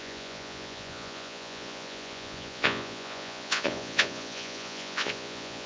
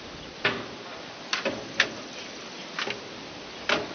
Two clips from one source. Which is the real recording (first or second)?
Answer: second